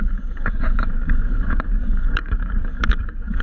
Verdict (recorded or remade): remade